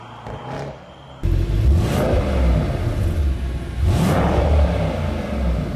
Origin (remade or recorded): recorded